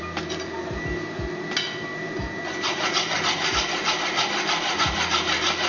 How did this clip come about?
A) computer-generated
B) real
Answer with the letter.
B